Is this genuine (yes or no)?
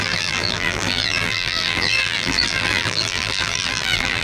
no